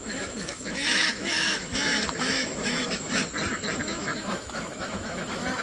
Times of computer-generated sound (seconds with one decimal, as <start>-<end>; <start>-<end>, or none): 0.0-3.2; 3.8-5.6